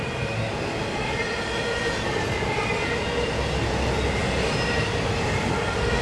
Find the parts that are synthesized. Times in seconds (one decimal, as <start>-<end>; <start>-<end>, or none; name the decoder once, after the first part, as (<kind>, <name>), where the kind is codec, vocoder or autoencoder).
none